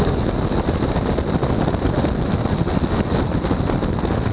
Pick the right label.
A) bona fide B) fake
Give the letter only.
A